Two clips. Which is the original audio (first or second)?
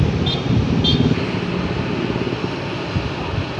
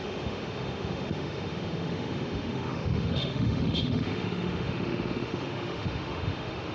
first